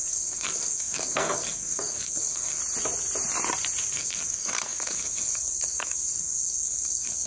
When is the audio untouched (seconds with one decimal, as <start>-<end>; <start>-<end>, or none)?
2.6-3.9